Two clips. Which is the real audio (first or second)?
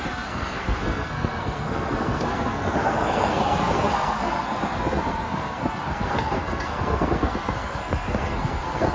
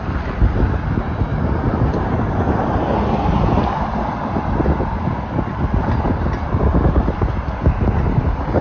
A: second